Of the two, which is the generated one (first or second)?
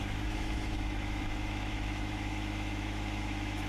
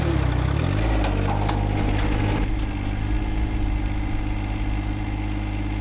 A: first